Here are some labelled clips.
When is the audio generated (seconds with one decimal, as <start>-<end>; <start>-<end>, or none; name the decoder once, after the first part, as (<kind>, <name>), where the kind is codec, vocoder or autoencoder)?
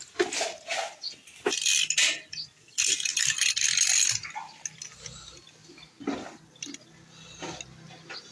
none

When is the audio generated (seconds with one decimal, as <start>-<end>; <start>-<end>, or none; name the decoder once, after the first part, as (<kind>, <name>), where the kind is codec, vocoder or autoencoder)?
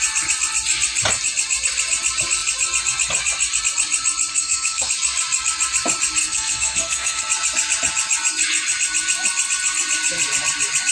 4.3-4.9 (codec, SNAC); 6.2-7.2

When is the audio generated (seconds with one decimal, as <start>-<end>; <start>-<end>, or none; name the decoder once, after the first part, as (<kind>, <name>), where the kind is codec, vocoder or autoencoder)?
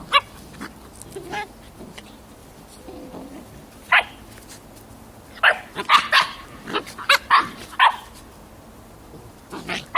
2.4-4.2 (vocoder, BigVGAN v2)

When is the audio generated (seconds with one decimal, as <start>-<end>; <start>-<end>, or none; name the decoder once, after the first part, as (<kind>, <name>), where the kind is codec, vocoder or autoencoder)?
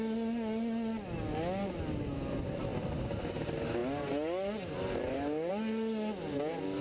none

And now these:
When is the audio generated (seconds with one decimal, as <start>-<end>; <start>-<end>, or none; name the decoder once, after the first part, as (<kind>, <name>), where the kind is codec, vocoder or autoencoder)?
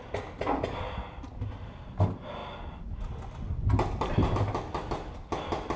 none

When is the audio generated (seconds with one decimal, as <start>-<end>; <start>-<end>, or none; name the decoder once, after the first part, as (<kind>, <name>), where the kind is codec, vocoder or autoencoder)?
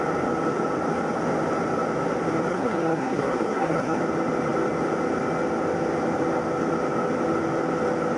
2.5-4.0 (codec, SNAC)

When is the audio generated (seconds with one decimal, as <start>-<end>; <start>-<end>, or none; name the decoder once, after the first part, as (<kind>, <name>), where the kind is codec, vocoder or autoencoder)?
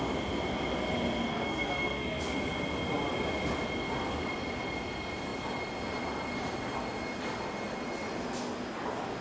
1.3-2.2 (codec, SNAC)